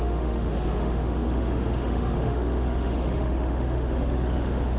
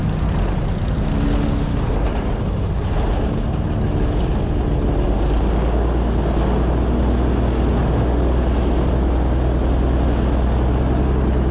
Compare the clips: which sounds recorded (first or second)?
second